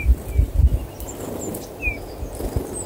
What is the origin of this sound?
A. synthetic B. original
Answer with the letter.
B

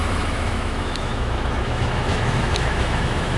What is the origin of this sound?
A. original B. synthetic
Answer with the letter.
B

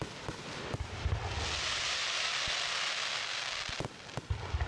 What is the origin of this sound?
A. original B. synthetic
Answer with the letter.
A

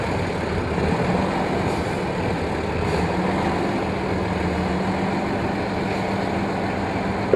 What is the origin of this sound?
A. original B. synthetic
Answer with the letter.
A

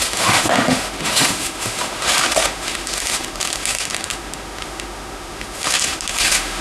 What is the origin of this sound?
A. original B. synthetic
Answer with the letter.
B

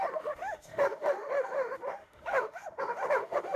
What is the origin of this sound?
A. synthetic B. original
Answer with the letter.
A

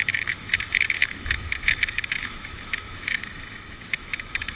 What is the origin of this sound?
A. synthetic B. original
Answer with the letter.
A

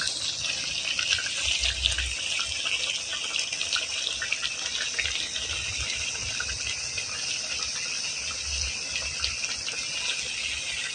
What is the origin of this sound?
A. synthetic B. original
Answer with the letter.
B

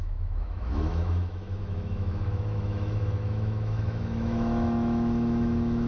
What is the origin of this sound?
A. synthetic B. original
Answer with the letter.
A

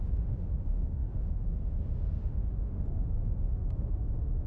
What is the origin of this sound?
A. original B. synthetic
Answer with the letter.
B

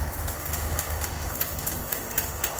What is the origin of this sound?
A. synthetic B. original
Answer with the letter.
A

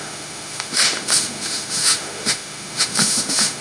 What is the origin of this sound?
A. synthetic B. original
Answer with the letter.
A